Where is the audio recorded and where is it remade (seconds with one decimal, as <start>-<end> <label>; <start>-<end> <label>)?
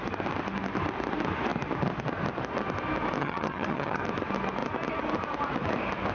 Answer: 0.0-3.2 recorded; 3.2-4.0 remade; 4.0-6.1 recorded